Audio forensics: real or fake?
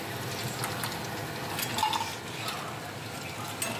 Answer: real